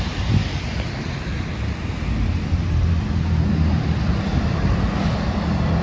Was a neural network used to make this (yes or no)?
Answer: no